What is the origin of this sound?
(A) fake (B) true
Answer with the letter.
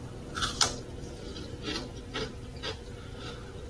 B